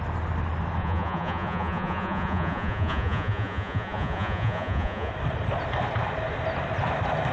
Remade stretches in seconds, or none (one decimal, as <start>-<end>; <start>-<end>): 0.8-5.1